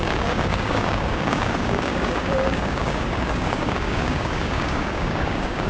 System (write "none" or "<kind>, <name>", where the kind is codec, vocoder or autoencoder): codec, DAC